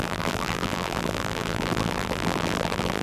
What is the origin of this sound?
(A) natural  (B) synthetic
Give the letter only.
B